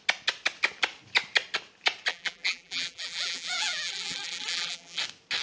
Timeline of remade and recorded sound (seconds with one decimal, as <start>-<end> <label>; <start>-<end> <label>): 0.0-2.1 recorded; 2.1-5.0 remade; 5.0-5.4 recorded